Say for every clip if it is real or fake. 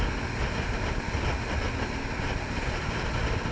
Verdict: real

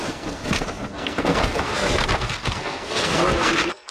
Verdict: fake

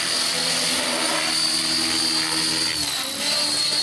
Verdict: real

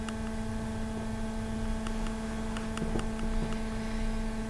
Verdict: real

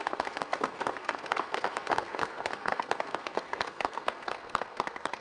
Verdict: fake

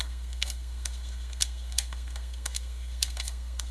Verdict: fake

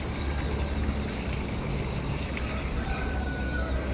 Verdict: real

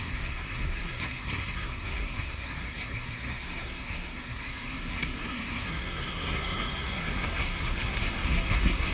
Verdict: fake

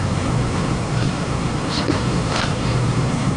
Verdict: fake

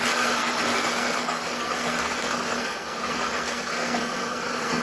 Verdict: fake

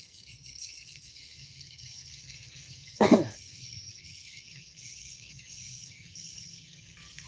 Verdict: fake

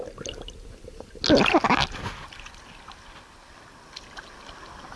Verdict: real